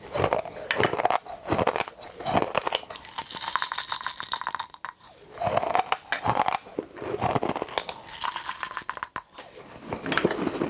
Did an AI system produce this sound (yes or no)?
no